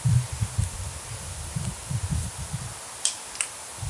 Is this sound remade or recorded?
recorded